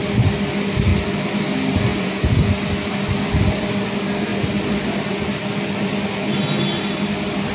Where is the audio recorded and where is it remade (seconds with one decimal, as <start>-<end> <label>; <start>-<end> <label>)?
0.0-1.9 recorded; 1.9-2.5 remade; 2.5-7.5 recorded